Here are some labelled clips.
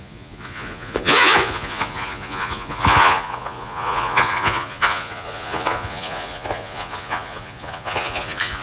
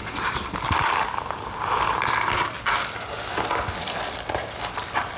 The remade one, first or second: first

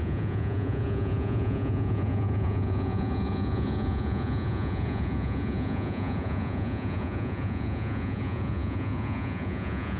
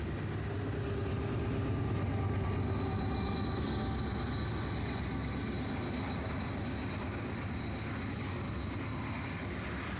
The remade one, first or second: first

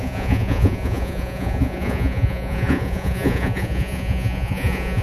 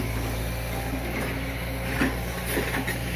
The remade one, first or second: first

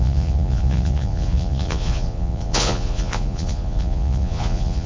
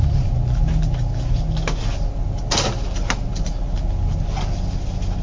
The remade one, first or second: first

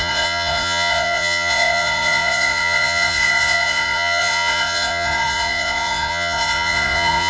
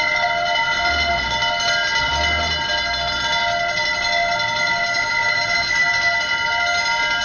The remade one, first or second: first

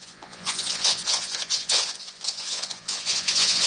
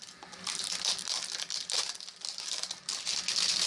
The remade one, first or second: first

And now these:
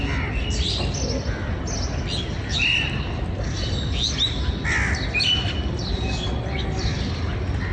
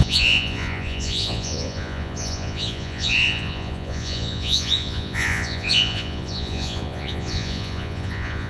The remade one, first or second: second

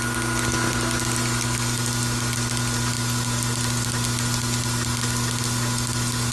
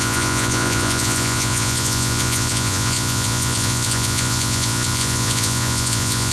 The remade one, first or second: second